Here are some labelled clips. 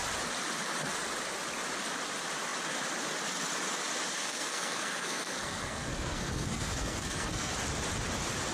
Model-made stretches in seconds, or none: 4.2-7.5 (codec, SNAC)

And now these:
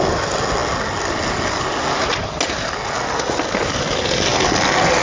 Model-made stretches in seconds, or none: none

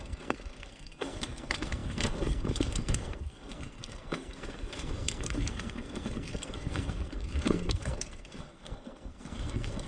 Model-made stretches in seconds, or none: 0.0-9.9 (codec, SNAC)

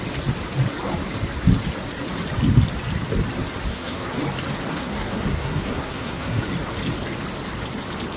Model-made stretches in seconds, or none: 3.7-4.2 (codec, SNAC); 4.7-6.4

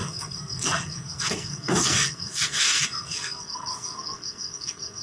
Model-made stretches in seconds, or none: 0.0-5.0 (codec, SNAC)